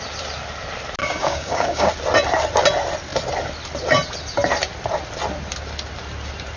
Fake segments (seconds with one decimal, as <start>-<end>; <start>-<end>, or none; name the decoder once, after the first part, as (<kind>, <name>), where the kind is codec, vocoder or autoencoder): 1.0-1.9 (codec, DAC)